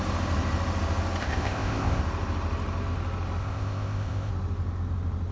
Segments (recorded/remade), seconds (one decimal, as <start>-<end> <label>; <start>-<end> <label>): 0.0-1.2 recorded; 1.2-2.0 remade; 2.0-3.4 recorded; 3.4-4.3 remade; 4.3-5.3 recorded